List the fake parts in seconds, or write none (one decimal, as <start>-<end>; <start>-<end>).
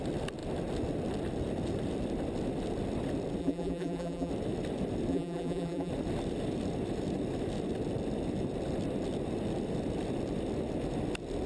3.4-4.3; 5.1-5.9